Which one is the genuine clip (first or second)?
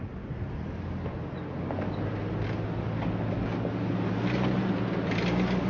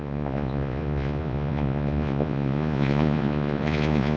first